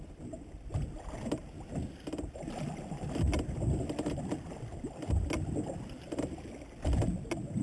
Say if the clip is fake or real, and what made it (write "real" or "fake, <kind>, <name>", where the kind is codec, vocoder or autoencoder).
real